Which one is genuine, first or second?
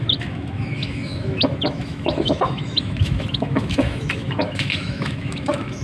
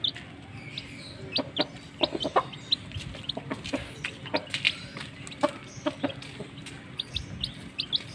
second